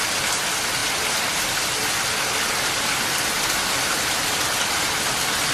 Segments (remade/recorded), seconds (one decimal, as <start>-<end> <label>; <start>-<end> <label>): 0.0-5.5 recorded